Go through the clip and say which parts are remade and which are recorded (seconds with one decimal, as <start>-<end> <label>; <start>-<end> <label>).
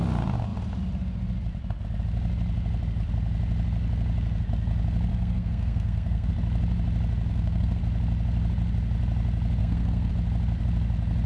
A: 0.0-5.1 recorded; 5.1-6.3 remade; 6.3-7.3 recorded; 7.3-7.8 remade; 7.8-9.6 recorded; 9.6-10.1 remade; 10.1-11.3 recorded